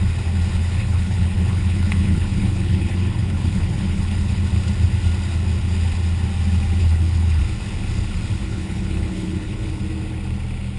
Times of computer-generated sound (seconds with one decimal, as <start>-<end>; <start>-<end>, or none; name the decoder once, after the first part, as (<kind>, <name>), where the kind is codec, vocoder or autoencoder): 0.6-4.4 (codec, HILCodec); 6.8-7.4; 8.4-9.8